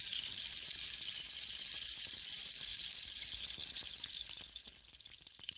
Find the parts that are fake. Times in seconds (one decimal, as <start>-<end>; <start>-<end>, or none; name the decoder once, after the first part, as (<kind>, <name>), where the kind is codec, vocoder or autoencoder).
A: none